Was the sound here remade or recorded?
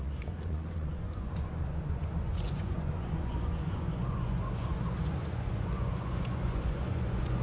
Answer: remade